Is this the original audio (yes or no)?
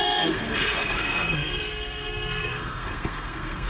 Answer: no